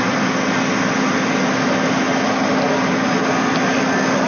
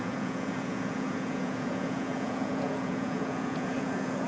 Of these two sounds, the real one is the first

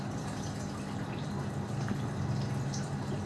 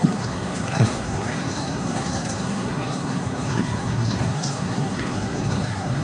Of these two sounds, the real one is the first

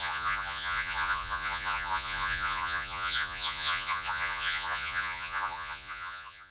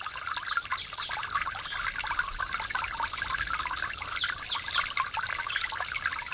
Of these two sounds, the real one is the second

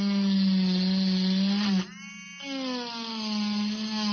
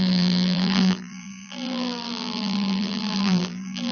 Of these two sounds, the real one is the first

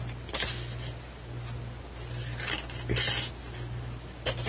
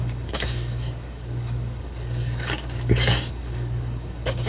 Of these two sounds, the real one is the first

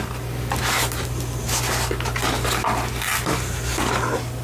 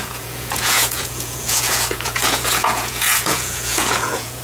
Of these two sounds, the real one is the first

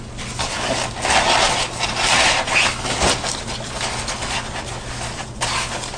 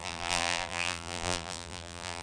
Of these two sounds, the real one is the first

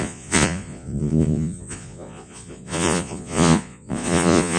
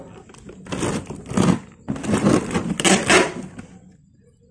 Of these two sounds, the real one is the second